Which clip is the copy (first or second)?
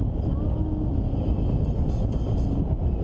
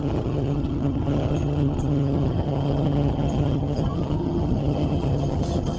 second